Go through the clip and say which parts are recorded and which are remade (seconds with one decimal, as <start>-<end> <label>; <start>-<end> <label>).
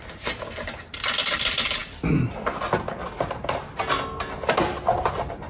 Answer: 0.0-5.5 recorded